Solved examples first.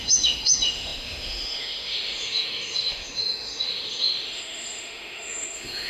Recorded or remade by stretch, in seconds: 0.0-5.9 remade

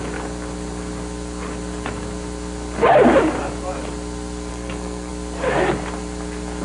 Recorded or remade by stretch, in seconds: 0.0-4.5 recorded; 4.5-5.1 remade; 5.1-6.6 recorded

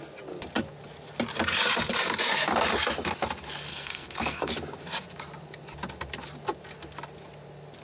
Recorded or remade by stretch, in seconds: 0.0-3.7 recorded; 3.7-4.5 remade; 4.5-7.8 recorded